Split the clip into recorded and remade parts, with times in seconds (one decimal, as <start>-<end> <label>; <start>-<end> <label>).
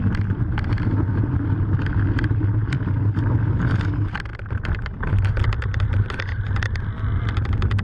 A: 0.0-7.8 recorded